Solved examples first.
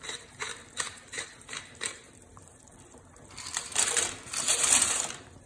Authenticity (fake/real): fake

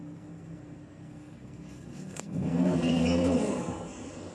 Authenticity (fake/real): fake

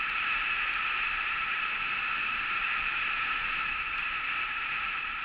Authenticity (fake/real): fake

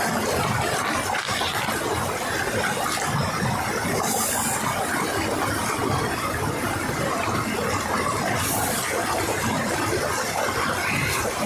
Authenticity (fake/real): real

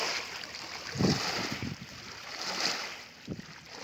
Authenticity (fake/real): real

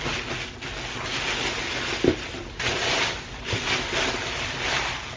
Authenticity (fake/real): real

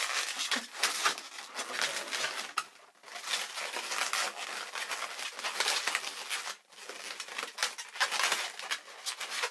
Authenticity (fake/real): real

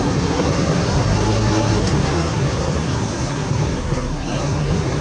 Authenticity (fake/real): fake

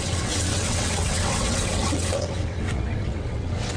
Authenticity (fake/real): fake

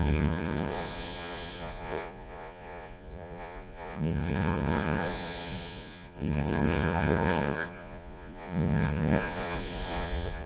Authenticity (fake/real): fake